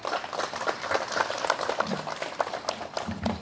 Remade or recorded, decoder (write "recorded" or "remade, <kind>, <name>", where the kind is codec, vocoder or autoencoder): recorded